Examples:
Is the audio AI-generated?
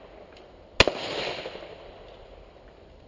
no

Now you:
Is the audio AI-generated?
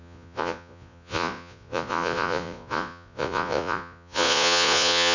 yes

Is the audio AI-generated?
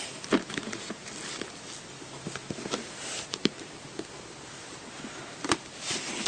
no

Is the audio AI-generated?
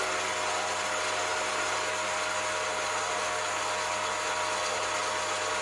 no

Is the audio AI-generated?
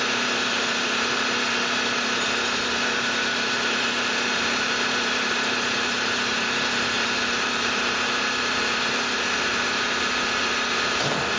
yes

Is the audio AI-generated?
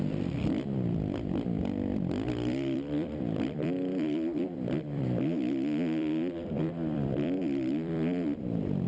yes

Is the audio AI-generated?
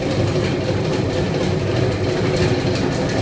yes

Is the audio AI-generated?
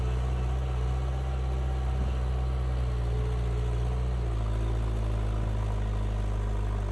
no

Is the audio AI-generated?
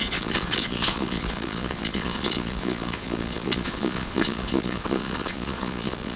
yes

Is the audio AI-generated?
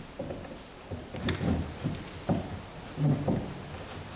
no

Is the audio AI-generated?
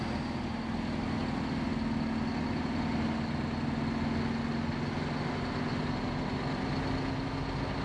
no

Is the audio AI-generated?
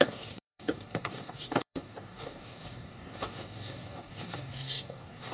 yes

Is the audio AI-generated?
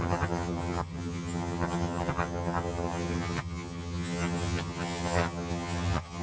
yes